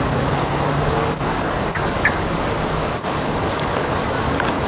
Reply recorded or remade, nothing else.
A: remade